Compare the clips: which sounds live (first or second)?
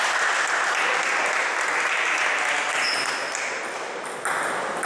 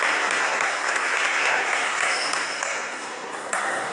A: first